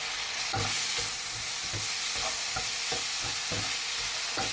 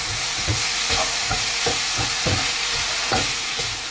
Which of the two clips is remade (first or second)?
second